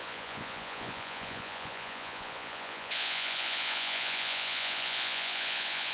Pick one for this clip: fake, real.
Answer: fake